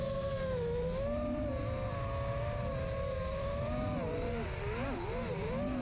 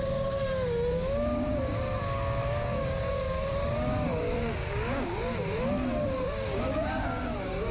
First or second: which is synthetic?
second